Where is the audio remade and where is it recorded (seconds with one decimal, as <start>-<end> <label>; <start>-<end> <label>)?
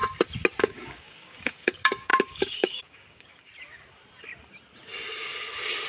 0.0-0.6 recorded; 0.6-3.5 remade; 3.5-5.9 recorded